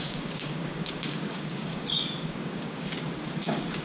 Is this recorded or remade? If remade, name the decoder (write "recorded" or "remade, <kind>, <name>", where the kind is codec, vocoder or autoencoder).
remade, codec, DAC